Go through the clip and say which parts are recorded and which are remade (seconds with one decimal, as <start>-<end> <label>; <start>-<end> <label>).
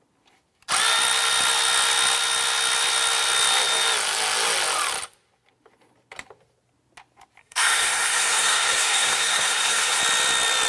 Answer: 0.0-7.4 recorded; 7.4-10.0 remade; 10.0-10.7 recorded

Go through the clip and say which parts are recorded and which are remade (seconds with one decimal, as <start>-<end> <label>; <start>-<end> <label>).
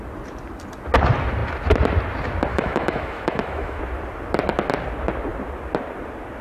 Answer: 0.0-2.5 recorded; 2.5-3.8 remade; 3.8-6.4 recorded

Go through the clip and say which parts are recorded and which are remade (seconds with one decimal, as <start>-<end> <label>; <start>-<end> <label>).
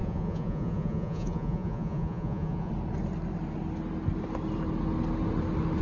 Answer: 0.0-2.7 remade; 2.7-5.8 recorded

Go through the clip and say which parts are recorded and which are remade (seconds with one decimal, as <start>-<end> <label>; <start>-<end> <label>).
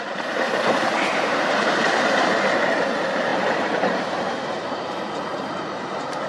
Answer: 0.0-6.3 remade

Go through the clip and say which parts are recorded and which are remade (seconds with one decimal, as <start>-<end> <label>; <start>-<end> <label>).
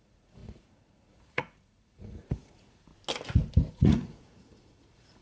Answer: 0.0-2.9 remade; 2.9-3.7 recorded; 3.7-5.2 remade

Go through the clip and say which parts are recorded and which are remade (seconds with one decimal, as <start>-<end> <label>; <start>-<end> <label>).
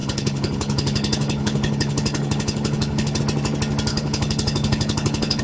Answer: 0.0-3.2 remade; 3.2-3.9 recorded; 3.9-5.4 remade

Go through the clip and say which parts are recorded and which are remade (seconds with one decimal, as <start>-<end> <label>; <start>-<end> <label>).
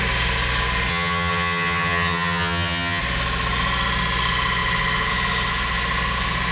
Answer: 0.0-0.9 recorded; 0.9-3.0 remade; 3.0-6.5 recorded